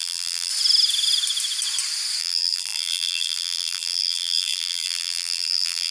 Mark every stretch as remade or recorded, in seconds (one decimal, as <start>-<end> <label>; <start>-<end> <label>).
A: 0.0-0.5 remade; 0.5-2.2 recorded; 2.2-5.9 remade